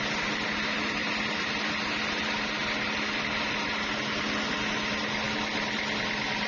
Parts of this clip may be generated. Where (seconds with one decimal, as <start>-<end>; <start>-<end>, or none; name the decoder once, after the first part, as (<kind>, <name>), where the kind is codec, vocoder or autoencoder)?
none